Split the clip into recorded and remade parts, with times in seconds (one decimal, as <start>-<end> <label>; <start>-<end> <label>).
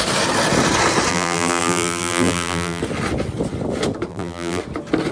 0.0-1.1 recorded; 1.1-2.8 remade; 2.8-4.1 recorded; 4.1-4.6 remade; 4.6-5.1 recorded